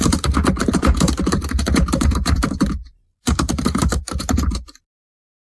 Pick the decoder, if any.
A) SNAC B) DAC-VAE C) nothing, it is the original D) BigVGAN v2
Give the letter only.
D